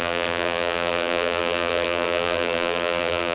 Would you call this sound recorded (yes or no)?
no